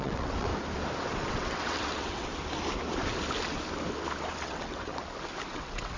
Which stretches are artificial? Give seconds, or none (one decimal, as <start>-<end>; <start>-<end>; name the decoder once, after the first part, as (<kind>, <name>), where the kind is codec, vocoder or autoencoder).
0.0-0.5 (vocoder, WaveNeXt); 1.3-2.3; 4.4-4.9; 5.5-6.0